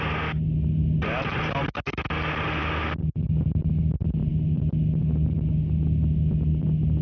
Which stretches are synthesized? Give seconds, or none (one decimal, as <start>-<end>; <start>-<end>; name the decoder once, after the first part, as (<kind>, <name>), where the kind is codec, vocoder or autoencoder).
none